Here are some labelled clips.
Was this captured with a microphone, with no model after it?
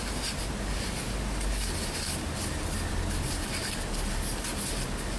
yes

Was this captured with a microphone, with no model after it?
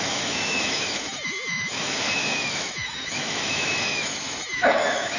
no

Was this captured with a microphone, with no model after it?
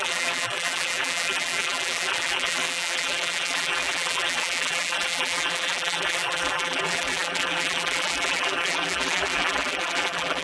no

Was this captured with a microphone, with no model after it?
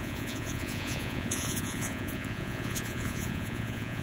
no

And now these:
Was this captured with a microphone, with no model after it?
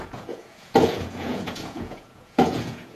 no